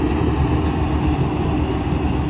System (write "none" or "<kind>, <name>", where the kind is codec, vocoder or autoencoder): none